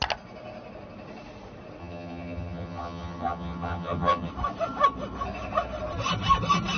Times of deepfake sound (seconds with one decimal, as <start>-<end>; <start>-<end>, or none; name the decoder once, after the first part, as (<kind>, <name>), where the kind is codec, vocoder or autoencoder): 1.8-4.3 (vocoder, HiFi-GAN)